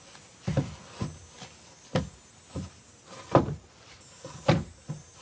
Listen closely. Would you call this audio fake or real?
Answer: real